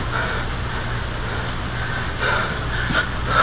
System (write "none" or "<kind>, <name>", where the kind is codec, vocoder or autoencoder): none